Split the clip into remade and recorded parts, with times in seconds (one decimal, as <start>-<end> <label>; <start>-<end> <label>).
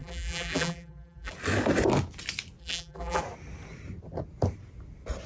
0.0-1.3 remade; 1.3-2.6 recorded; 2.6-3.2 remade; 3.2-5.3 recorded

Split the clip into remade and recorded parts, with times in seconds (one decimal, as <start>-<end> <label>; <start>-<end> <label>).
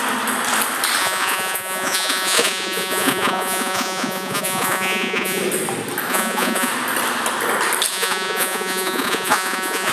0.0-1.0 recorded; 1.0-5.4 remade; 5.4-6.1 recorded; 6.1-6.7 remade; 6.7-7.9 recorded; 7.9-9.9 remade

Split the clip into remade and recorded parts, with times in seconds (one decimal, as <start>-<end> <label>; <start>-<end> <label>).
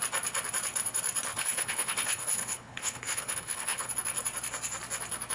0.0-1.3 recorded; 1.3-3.9 remade; 3.9-5.3 recorded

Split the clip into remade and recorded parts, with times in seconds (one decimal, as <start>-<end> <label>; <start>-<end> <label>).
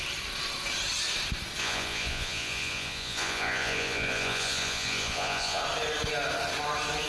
0.0-1.6 recorded; 1.6-5.6 remade; 5.6-7.1 recorded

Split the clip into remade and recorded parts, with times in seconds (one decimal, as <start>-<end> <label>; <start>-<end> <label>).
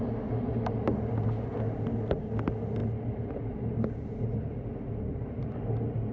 0.0-6.1 recorded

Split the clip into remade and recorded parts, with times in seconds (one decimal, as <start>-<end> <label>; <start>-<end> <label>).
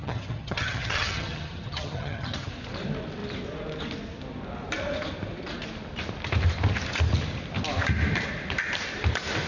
0.0-2.5 remade; 2.5-9.5 recorded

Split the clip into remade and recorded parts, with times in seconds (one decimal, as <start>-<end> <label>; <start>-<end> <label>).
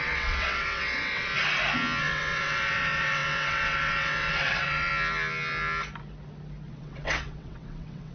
0.0-1.3 remade; 1.3-2.0 recorded; 2.0-4.9 remade; 4.9-6.7 recorded; 6.7-8.1 remade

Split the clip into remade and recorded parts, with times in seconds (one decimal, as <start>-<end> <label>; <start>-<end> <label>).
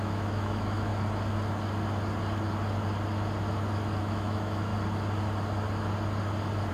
0.0-0.9 remade; 0.9-4.0 recorded; 4.0-4.7 remade; 4.7-6.7 recorded